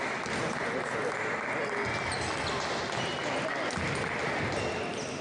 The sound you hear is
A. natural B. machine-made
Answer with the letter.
A